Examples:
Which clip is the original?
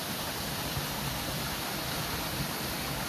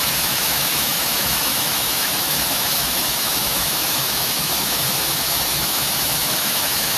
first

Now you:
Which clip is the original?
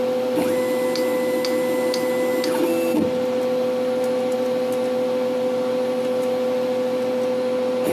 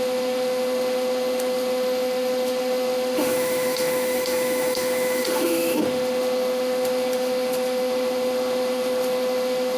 first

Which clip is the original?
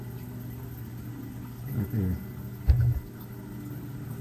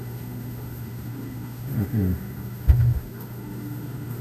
first